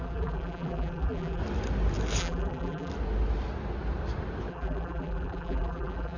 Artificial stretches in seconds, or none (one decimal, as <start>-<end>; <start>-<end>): 0.0-1.4; 2.2-2.9; 4.5-6.2